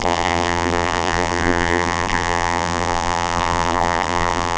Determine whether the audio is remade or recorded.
remade